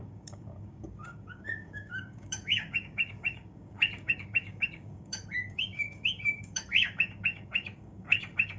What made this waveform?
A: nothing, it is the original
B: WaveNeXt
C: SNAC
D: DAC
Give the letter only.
D